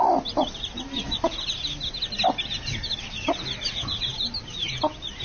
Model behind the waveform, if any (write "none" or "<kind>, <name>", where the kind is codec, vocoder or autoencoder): none